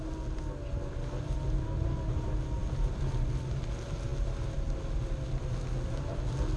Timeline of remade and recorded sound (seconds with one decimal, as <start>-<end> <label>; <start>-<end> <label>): 0.0-6.6 recorded